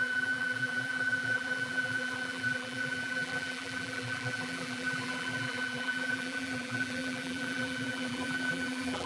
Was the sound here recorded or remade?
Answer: remade